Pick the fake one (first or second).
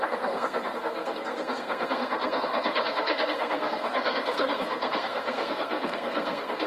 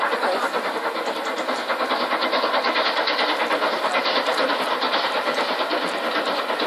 first